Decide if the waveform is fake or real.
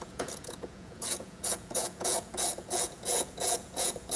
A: fake